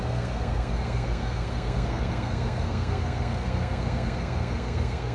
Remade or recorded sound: remade